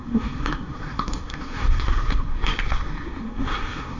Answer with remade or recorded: remade